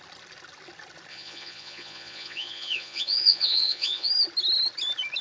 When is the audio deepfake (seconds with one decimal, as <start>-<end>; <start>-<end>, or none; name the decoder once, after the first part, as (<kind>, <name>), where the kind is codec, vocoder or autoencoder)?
1.1-4.1 (vocoder, Vocos)

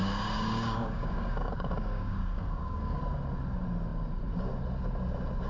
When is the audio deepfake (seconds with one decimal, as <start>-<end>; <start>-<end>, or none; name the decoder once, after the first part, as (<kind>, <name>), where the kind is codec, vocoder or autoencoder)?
0.0-3.0 (codec, DAC)

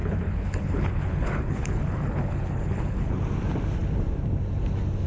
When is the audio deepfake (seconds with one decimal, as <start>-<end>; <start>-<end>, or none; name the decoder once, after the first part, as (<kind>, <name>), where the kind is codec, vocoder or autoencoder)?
0.0-3.1 (codec, HILCodec)

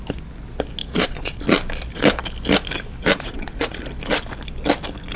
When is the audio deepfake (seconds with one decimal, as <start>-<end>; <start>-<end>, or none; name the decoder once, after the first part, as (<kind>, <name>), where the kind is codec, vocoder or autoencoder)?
0.8-1.4 (vocoder, Vocos); 3.1-3.8

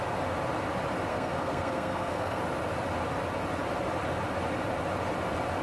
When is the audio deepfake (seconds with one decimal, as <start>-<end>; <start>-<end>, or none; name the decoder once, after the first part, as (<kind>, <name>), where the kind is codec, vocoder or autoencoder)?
1.1-2.4 (codec, SNAC)

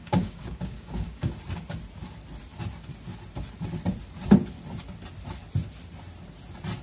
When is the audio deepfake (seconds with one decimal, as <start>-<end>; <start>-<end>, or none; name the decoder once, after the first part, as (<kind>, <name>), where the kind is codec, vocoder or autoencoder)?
0.0-1.3 (codec, DAC)

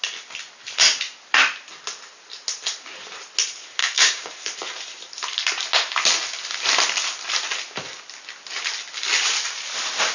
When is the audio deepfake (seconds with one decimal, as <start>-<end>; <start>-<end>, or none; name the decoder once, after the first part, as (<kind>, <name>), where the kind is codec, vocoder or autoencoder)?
3.8-4.3 (codec, DAC)

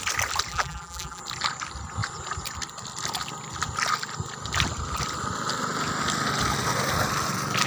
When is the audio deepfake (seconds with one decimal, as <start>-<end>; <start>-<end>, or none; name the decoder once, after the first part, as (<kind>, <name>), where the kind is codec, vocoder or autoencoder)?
0.5-1.2 (vocoder, BigVGAN v2)